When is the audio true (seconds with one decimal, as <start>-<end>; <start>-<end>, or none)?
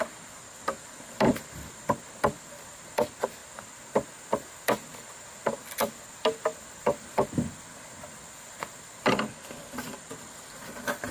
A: 3.4-4.5